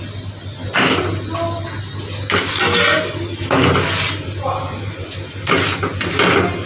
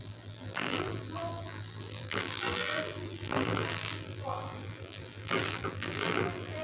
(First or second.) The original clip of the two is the first